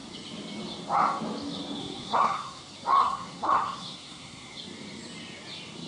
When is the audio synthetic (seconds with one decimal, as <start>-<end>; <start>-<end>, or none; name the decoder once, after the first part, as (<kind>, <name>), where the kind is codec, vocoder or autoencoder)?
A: 1.8-2.6 (codec, SNAC); 3.0-4.6